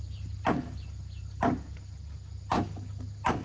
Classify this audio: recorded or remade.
recorded